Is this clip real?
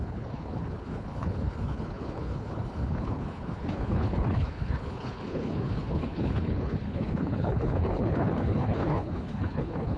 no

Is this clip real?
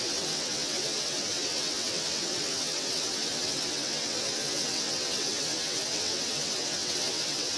no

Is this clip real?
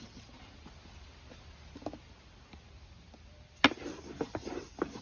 yes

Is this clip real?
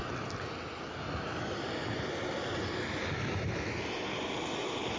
yes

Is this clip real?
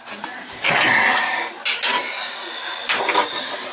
yes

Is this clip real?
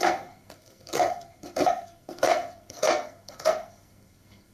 no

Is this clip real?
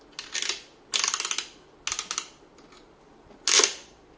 yes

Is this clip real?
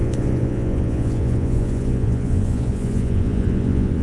no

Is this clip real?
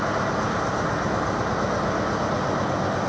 yes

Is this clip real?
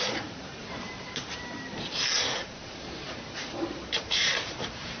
no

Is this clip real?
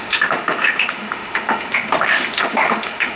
no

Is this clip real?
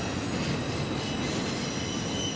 yes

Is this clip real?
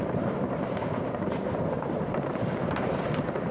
no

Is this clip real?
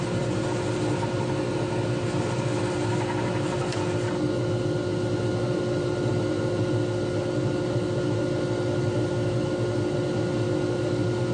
yes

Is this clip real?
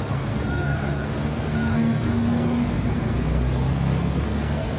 no